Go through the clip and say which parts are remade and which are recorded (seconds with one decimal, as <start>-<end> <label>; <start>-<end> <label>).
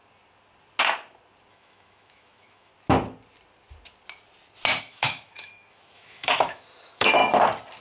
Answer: 0.0-1.5 recorded; 1.5-2.7 remade; 2.7-4.8 recorded; 4.8-7.2 remade; 7.2-7.8 recorded